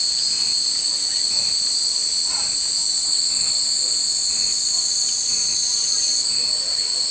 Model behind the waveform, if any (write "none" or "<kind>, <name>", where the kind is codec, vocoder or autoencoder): none